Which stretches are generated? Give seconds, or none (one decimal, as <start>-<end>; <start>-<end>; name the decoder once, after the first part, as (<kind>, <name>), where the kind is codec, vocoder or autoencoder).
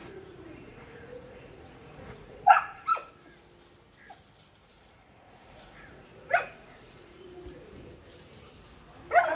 0.0-3.1 (vocoder, Vocos); 4.7-7.2